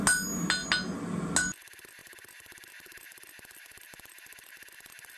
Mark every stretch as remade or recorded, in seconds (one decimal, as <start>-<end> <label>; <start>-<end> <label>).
0.0-5.2 recorded